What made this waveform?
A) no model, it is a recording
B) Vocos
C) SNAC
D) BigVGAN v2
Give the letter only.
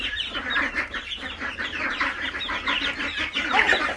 D